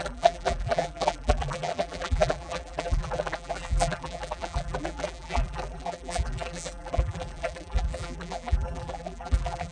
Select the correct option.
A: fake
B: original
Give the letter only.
A